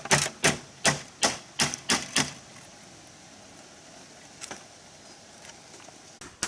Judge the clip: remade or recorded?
recorded